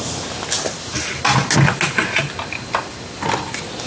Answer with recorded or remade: recorded